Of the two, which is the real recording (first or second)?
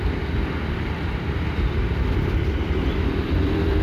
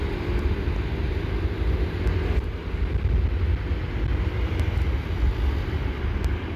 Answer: second